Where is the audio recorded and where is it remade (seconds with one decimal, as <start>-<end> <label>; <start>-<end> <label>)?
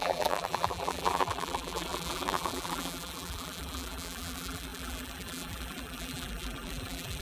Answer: 0.0-7.2 remade